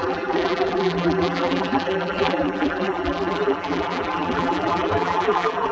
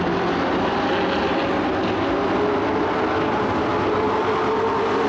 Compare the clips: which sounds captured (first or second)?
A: second